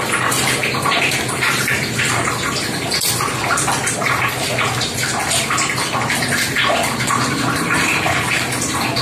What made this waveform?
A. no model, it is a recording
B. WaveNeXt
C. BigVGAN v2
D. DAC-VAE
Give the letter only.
A